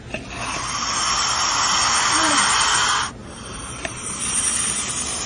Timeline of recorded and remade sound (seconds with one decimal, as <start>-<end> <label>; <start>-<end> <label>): 0.0-3.2 recorded; 3.2-5.3 remade